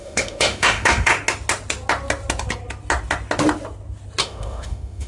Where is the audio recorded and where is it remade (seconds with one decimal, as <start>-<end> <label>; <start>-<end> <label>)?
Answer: 0.0-1.1 remade; 1.1-4.2 recorded; 4.2-5.1 remade